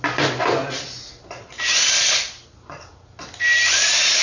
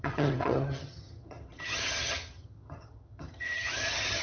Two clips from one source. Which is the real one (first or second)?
first